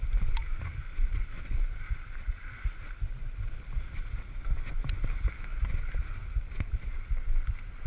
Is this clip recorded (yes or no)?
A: yes